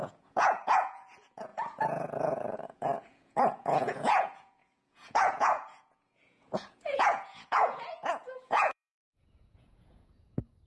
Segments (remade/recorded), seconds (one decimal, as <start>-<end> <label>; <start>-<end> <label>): 0.0-10.7 remade